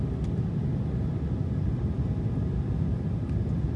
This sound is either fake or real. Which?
real